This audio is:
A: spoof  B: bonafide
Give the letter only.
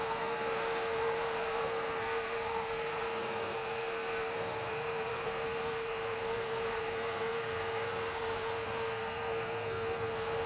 A